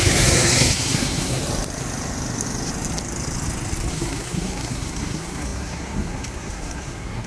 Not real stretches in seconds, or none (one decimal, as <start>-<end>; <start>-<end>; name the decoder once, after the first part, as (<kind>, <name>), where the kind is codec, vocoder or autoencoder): 0.0-1.4 (codec, SNAC); 3.9-7.3